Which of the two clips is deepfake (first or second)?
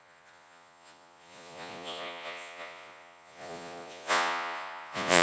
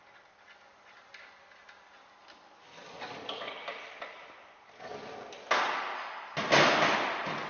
first